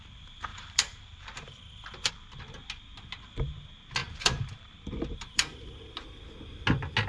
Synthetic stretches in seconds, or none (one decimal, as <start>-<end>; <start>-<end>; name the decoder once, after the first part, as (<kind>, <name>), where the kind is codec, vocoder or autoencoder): 0.5-2.1 (vocoder, BigVGAN v2); 4.0-6.3